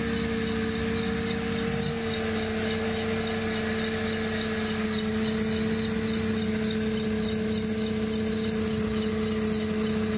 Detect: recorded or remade recorded